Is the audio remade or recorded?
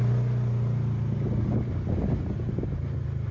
recorded